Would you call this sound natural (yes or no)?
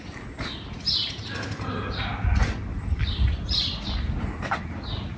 yes